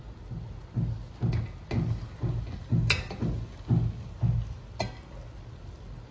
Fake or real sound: real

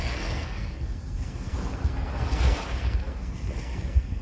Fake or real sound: fake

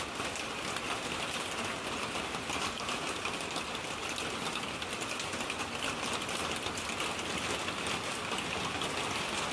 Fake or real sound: real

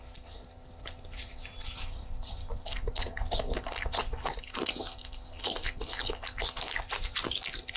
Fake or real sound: real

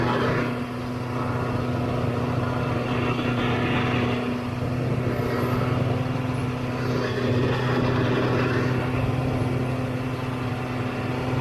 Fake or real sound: real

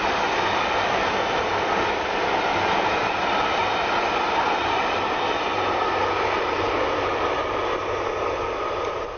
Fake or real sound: real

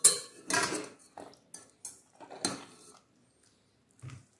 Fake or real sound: real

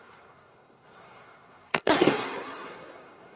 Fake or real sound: fake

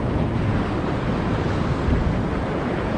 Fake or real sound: real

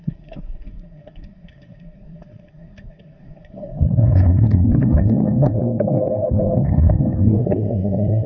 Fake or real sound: fake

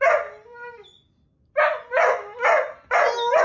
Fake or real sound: real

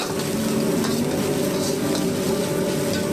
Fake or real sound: real